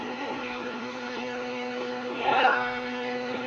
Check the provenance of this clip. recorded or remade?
remade